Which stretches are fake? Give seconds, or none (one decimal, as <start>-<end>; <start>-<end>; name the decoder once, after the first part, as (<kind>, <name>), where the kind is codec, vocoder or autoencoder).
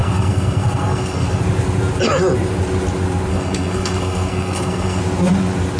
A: 0.0-1.4 (codec, SNAC); 3.3-5.0